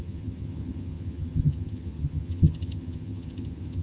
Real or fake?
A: fake